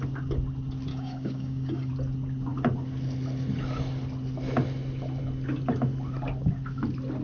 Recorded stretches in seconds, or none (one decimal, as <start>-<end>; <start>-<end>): 0.0-0.9; 1.9-7.2